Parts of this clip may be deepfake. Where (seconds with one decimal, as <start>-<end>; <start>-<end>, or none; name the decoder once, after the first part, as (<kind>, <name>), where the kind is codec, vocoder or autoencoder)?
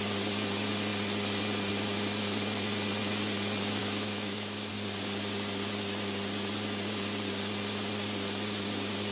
3.8-4.7 (autoencoder, DAC-VAE)